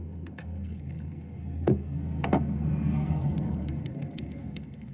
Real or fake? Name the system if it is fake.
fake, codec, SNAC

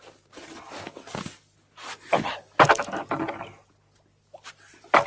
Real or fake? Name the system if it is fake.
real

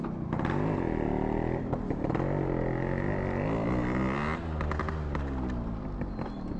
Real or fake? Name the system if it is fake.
real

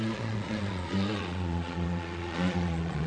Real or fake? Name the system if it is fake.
fake, vocoder, Vocos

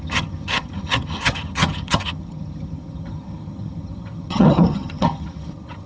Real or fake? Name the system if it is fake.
fake, vocoder, HiFi-GAN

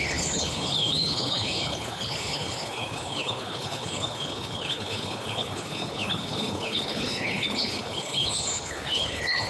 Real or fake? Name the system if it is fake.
fake, codec, HILCodec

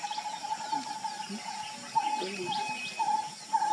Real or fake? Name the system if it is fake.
real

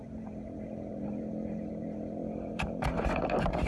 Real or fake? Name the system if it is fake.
fake, vocoder, BigVGAN v2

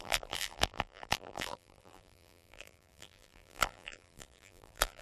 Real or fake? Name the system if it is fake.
fake, vocoder, BigVGAN v2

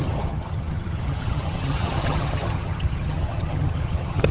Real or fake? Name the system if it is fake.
fake, vocoder, HiFi-GAN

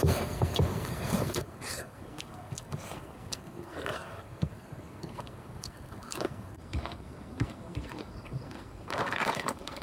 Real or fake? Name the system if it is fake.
fake, codec, SNAC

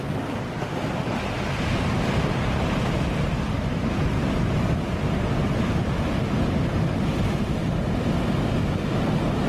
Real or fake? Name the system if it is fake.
real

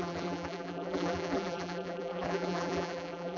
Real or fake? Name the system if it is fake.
fake, vocoder, BigVGAN v2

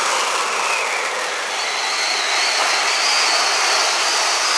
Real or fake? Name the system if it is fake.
real